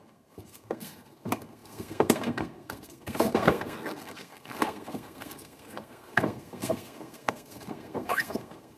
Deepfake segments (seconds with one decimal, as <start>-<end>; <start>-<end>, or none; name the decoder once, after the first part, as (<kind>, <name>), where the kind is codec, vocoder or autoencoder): 0.0-8.8 (codec, SNAC)